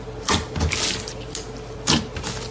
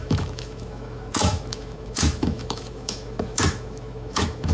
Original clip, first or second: first